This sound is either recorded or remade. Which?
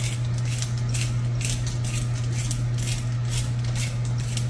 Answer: recorded